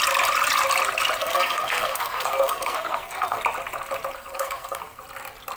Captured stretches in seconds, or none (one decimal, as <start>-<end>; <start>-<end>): 0.0-1.2; 3.4-4.1; 5.0-5.6